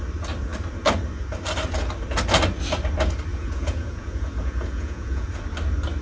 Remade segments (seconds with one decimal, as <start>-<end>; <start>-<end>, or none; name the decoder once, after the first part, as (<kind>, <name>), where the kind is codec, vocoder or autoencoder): 3.3-5.4 (vocoder, Vocos)